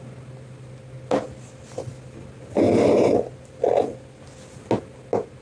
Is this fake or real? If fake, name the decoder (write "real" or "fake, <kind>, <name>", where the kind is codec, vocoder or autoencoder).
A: real